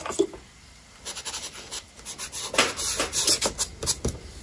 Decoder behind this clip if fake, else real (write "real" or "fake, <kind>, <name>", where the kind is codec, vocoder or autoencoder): real